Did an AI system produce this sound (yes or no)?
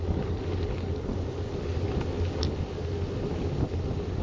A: no